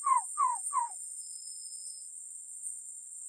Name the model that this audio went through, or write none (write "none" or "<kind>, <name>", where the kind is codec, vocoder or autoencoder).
vocoder, Vocos